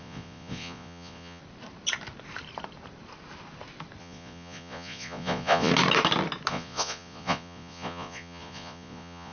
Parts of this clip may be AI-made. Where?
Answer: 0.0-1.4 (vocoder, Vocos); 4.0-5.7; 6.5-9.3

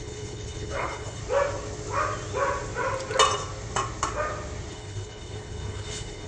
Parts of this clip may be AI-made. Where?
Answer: 0.0-1.2 (codec, HILCodec); 4.7-6.3